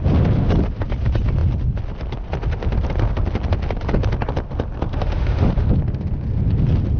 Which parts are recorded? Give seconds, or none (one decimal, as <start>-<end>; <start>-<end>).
0.0-4.9; 5.5-7.0